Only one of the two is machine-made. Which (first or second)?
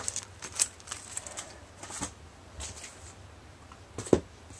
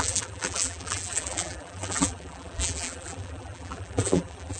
second